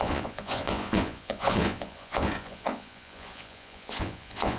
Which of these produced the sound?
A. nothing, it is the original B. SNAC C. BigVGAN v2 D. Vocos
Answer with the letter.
D